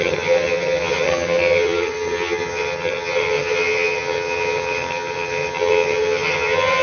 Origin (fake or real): fake